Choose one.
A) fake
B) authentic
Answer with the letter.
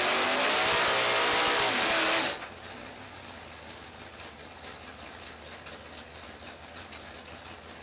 B